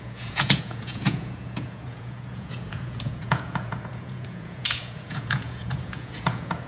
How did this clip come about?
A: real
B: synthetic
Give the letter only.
B